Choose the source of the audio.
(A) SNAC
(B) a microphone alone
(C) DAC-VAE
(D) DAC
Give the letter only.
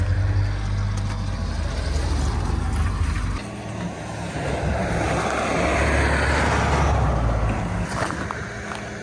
B